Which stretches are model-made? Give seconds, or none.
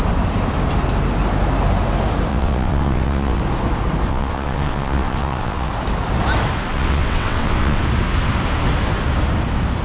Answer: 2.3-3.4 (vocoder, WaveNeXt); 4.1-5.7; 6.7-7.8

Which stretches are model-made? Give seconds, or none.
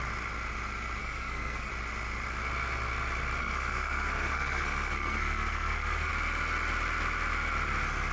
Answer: 1.0-1.7 (codec, SNAC); 3.4-6.1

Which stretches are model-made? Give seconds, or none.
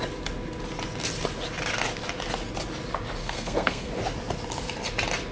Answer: 3.2-3.9 (codec, SNAC)